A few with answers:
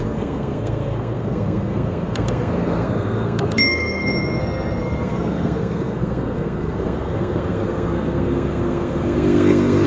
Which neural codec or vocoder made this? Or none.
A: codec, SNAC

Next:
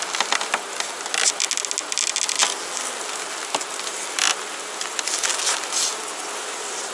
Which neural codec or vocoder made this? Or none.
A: none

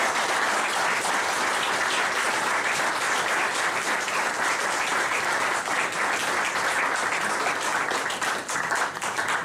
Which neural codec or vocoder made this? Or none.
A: none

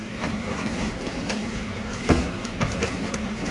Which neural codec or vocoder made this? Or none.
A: codec, SNAC